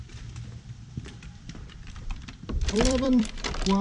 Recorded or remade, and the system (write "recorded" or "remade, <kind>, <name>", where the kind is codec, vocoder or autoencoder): remade, vocoder, BigVGAN v2